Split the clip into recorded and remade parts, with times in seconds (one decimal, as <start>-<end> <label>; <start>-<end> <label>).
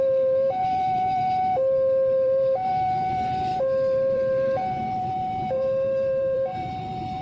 0.0-7.2 remade